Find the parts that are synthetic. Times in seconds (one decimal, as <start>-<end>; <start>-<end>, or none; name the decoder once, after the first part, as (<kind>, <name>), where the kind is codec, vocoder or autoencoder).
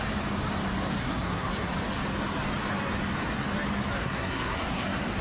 1.0-1.7 (codec, SNAC); 4.0-5.2